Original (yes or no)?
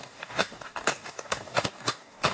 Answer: no